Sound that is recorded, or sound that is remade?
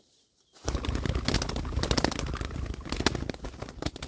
recorded